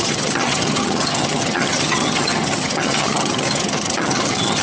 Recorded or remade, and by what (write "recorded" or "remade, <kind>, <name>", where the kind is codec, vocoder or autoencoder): remade, vocoder, HiFi-GAN